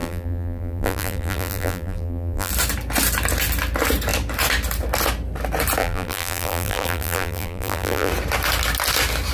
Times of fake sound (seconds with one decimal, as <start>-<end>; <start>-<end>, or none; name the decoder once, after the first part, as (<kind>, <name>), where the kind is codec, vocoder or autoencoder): 0.0-2.5 (vocoder, BigVGAN v2); 5.8-8.1